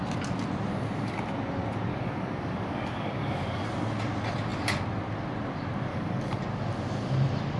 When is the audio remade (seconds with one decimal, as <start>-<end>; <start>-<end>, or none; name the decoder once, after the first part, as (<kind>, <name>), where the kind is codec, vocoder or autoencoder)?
1.9-3.6 (codec, DAC); 5.9-6.4